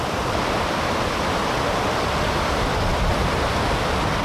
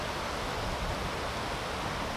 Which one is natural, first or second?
second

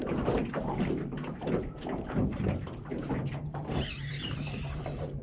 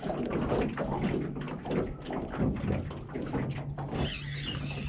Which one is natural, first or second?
second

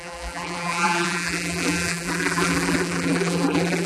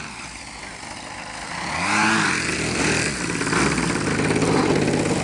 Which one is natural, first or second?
second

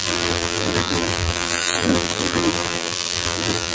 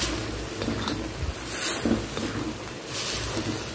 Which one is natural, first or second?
second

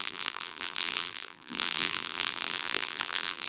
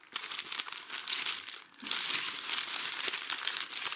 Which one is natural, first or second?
second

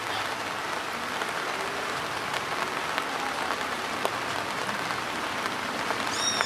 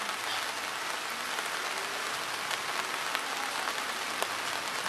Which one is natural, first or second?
second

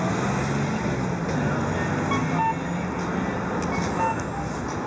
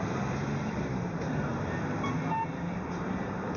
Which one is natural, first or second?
first